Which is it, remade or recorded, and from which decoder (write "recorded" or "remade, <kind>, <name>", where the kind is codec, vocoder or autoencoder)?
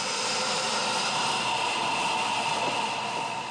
remade, vocoder, BigVGAN v2